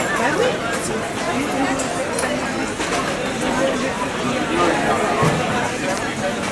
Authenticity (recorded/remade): recorded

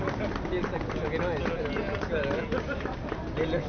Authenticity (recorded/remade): recorded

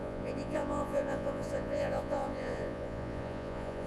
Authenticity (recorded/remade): remade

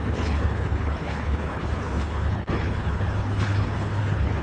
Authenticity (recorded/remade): remade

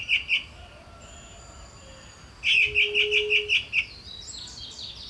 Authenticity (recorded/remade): recorded